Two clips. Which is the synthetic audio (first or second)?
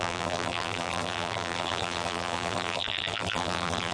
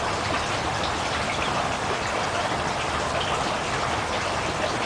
first